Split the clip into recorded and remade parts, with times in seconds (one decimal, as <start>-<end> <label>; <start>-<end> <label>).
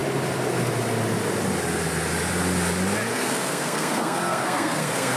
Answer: 0.0-3.1 recorded; 3.1-5.2 remade